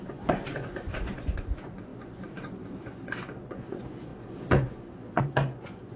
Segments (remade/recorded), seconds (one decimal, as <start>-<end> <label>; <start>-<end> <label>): 0.0-6.0 remade